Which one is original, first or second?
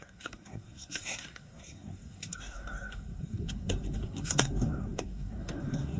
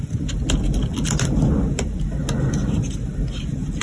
second